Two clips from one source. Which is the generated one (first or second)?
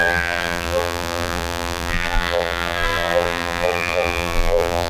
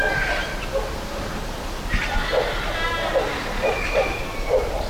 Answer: first